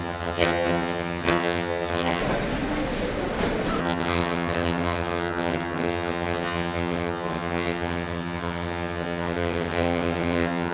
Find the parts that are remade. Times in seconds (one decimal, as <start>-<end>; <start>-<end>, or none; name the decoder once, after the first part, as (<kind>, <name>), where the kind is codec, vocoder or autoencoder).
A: 0.0-2.2 (vocoder, HiFi-GAN); 3.8-10.7

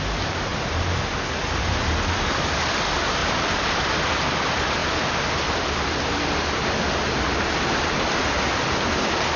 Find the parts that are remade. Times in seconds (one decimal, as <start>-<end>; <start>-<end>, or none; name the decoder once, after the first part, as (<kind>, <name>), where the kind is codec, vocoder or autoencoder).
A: none

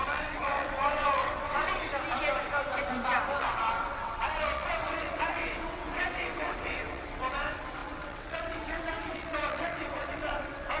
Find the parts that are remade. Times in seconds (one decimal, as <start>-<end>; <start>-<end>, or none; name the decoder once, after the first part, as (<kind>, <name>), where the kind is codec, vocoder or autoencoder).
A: 0.0-1.9 (vocoder, WaveNeXt); 3.4-10.8

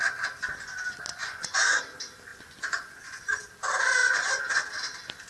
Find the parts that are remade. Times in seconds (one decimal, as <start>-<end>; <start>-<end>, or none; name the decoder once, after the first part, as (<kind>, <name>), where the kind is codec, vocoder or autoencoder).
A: 1.1-1.8 (vocoder, Vocos); 2.3-3.4; 4.0-4.6

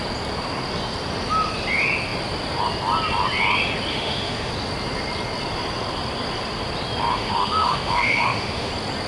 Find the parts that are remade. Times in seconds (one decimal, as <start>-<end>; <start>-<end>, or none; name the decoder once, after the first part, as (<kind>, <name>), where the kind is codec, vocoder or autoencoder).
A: 3.9-4.5 (autoencoder, DAC-VAE); 7.1-8.7

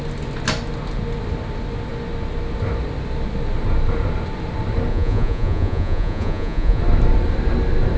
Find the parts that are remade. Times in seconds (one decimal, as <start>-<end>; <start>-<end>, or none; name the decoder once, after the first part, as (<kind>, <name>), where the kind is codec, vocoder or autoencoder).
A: 4.9-6.8 (vocoder, Vocos)

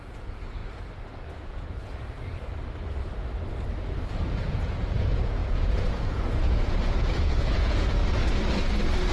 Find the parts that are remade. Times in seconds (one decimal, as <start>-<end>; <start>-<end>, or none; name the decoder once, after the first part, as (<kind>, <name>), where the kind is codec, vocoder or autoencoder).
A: 0.0-0.6 (vocoder, Vocos); 1.4-1.9; 4.1-8.0

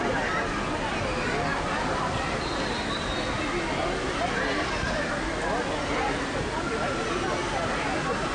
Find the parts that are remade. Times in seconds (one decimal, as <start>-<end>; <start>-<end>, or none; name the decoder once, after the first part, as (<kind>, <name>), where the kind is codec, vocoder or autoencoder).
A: none